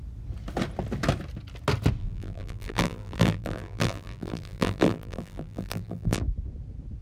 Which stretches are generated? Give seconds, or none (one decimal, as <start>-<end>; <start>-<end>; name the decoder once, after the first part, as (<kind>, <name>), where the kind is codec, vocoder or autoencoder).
2.0-6.2 (vocoder, BigVGAN v2)